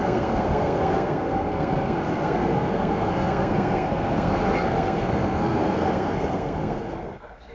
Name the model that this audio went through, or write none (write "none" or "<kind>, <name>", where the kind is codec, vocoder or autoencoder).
codec, SNAC